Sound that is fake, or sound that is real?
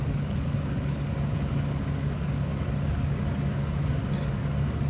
fake